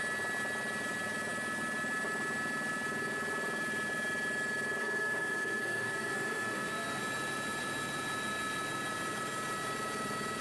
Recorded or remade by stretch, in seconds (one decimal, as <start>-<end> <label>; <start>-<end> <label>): 0.0-4.8 recorded; 4.8-7.0 remade; 7.0-10.4 recorded